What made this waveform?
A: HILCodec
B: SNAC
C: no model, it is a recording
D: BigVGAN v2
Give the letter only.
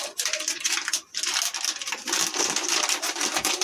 C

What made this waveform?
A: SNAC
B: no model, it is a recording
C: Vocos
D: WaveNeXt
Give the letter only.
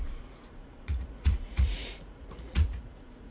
C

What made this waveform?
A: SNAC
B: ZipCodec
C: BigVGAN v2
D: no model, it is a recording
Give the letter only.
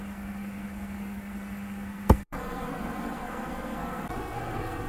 A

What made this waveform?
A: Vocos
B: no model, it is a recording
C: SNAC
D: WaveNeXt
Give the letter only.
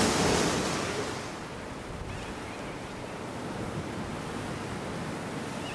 B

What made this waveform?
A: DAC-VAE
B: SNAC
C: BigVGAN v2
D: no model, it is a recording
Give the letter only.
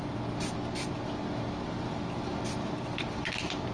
D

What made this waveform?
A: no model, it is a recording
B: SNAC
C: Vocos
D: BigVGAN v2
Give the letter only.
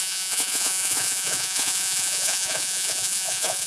C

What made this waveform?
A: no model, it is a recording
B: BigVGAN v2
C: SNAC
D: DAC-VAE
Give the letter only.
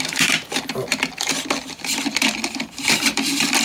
B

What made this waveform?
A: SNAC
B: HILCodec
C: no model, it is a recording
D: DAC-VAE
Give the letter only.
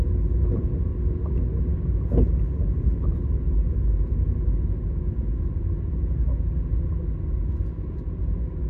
C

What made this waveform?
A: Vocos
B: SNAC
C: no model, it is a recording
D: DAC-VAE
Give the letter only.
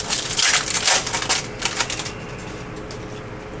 C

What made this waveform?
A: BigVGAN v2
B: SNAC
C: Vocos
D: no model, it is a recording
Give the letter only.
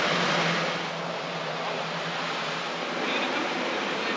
D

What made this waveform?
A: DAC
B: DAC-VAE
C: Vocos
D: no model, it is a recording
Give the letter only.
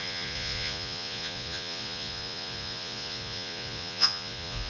C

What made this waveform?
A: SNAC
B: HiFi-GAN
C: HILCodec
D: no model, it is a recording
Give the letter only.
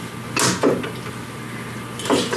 D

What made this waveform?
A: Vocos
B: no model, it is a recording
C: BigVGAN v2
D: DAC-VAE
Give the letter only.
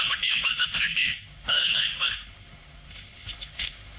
D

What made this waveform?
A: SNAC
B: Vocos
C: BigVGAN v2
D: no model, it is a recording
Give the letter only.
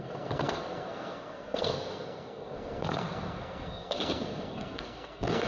A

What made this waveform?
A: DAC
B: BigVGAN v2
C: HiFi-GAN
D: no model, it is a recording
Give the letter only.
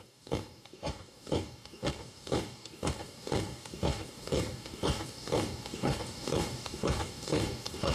A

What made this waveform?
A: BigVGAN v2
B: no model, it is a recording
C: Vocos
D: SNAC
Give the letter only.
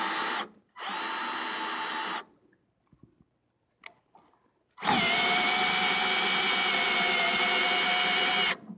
B